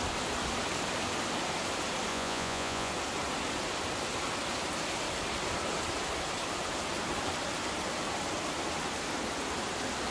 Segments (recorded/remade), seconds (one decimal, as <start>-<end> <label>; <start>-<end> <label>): 0.0-2.1 recorded; 2.1-2.9 remade; 2.9-10.1 recorded